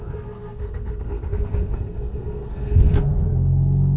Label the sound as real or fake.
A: fake